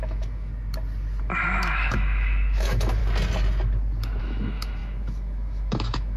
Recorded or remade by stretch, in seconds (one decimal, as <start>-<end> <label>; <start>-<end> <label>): 0.0-0.5 remade; 0.5-1.2 recorded; 1.2-3.0 remade; 3.0-4.2 recorded; 4.2-6.2 remade